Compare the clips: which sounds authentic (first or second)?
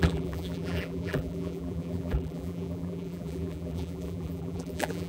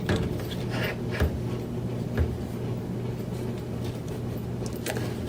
second